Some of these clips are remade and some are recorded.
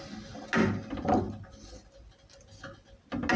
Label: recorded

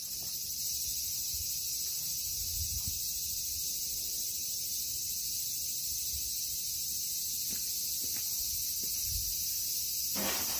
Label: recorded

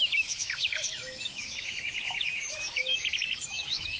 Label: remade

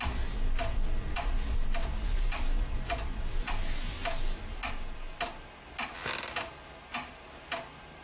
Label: recorded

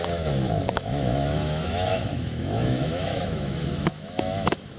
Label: remade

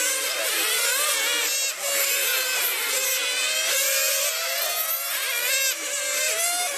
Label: recorded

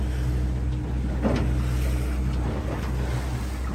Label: recorded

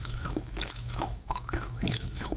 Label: remade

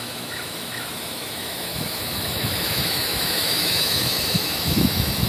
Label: remade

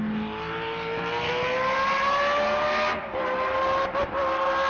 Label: recorded